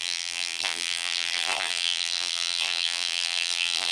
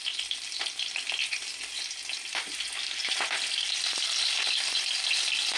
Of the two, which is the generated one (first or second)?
first